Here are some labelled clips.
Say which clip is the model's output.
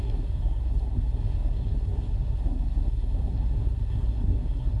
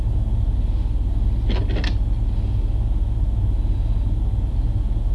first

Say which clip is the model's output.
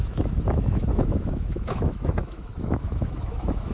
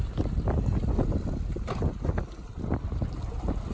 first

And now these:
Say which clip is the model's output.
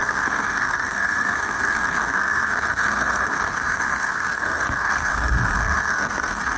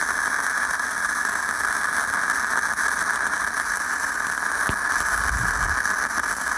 first